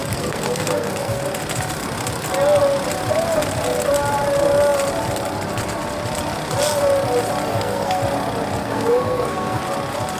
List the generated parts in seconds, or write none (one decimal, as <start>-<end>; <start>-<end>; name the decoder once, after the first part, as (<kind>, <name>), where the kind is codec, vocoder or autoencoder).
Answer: 0.0-1.2 (codec, SNAC); 7.5-8.0; 8.6-9.6